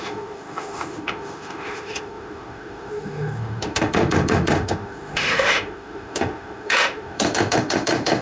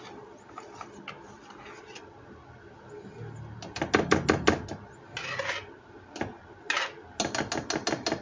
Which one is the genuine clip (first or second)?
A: second